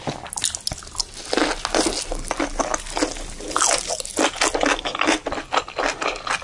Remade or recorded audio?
recorded